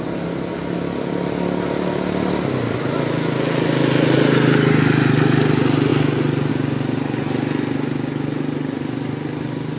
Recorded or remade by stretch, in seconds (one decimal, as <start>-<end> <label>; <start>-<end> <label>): 0.0-9.8 recorded